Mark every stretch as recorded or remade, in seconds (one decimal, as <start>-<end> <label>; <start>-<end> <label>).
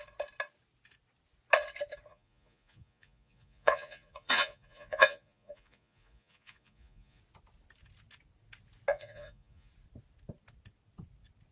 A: 0.0-2.1 recorded; 2.1-7.2 remade; 7.2-8.9 recorded; 8.9-9.7 remade; 9.7-11.5 recorded